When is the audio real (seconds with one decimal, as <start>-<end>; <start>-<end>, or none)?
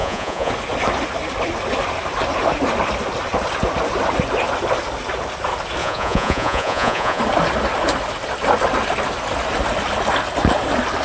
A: 0.5-5.8; 7.2-11.0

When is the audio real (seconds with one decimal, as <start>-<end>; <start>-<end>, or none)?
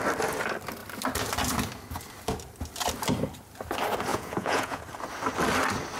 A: 0.0-4.1; 4.8-6.0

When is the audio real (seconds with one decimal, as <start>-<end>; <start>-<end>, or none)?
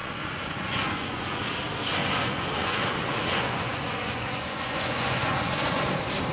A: 1.4-2.0; 5.8-6.3